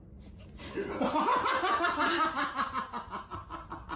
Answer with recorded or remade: recorded